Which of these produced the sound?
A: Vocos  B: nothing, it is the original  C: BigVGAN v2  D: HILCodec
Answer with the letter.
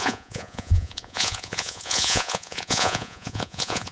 A